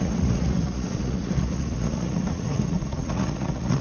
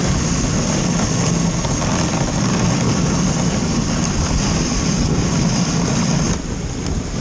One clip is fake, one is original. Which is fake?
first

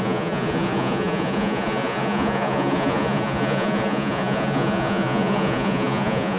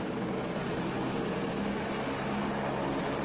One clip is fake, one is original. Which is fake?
first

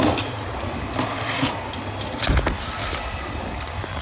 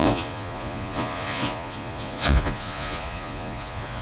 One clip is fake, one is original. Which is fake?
second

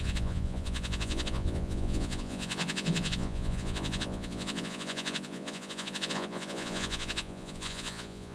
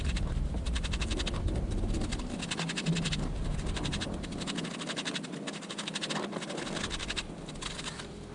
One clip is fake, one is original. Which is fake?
first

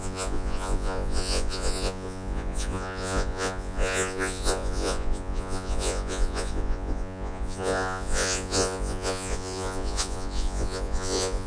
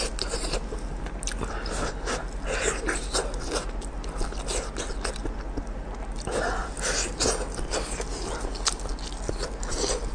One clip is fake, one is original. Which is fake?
first